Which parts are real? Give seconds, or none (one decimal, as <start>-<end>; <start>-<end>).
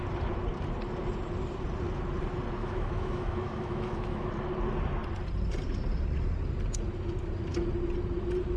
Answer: 0.0-2.6; 4.3-8.6